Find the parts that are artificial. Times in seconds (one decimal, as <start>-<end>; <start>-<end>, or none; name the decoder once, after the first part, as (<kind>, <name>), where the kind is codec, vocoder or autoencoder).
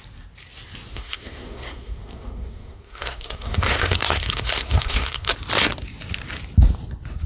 0.9-5.3 (codec, SNAC)